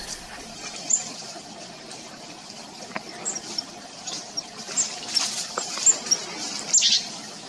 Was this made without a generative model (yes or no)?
yes